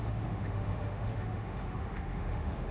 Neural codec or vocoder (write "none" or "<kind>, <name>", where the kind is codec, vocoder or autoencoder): autoencoder, DAC-VAE